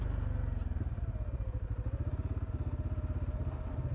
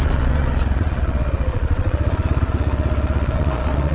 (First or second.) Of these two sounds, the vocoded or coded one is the second